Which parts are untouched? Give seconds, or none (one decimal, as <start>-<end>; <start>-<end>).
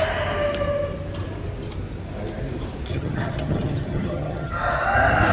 0.0-2.9; 4.5-5.3